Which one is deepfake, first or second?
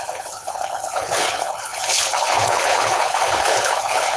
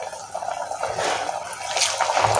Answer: first